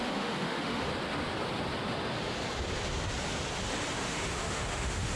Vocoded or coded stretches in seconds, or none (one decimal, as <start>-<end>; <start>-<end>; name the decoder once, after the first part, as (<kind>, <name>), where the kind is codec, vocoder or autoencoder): 0.0-0.9 (autoencoder, DAC-VAE); 4.0-5.2